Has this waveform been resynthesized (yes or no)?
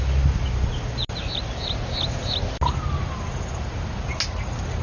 no